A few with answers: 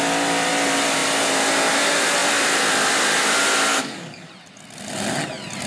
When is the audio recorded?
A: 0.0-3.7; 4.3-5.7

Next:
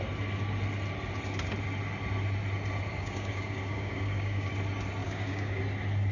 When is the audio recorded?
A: 0.0-2.9; 4.5-5.0; 5.6-6.1

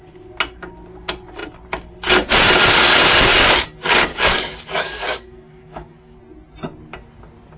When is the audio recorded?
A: 0.0-4.1; 6.2-7.6

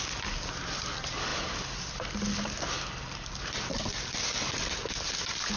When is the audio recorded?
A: 0.0-5.6